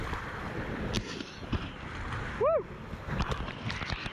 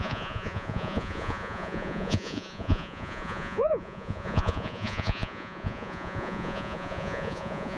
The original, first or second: first